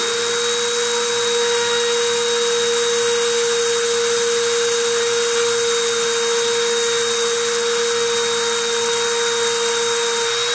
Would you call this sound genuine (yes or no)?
yes